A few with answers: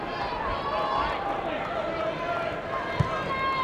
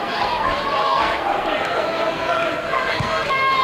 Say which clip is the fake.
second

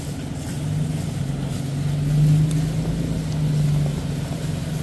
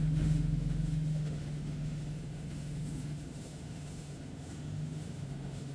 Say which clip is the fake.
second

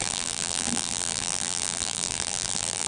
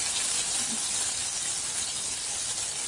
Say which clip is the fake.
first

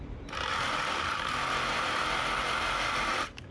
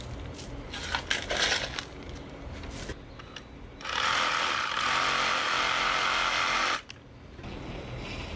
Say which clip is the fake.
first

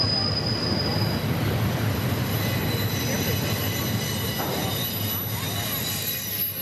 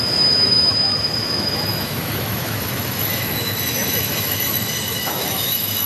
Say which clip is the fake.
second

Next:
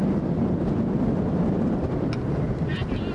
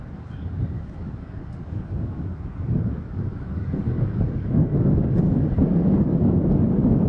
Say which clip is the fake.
second